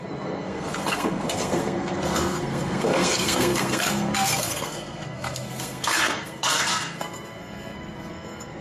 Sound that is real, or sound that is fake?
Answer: fake